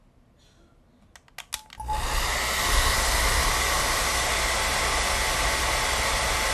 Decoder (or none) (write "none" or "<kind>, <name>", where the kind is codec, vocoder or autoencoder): none